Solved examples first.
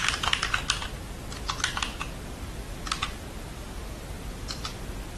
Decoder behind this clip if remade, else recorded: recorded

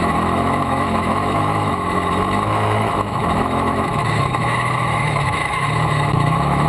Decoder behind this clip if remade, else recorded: remade, autoencoder, DAC-VAE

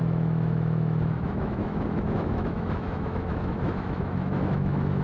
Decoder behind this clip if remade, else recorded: remade, autoencoder, DAC-VAE